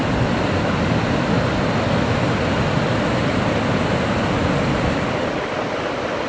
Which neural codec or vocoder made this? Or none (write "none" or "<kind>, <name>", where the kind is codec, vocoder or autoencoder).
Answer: none